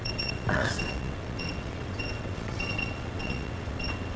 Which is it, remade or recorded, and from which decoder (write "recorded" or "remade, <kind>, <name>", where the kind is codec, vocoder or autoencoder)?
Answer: remade, vocoder, WaveNeXt